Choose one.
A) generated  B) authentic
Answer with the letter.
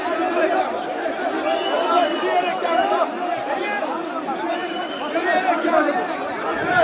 B